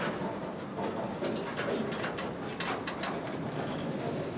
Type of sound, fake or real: real